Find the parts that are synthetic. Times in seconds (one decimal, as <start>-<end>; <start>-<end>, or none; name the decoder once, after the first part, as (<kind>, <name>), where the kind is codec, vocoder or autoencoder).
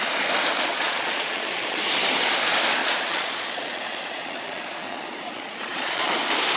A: 0.7-1.8 (vocoder, Vocos); 2.8-6.1